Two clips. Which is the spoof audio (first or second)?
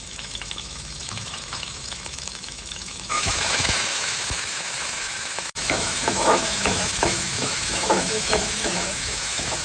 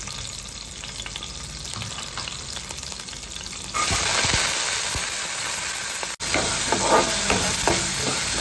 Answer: first